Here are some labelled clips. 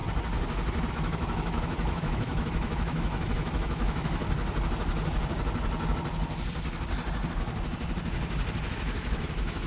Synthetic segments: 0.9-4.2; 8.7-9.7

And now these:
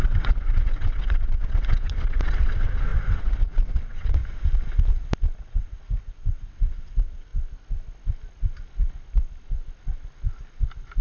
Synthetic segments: 0.0-4.2; 5.4-7.3